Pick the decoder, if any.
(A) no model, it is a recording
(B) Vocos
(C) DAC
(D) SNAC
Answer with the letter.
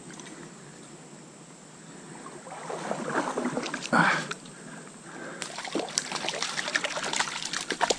A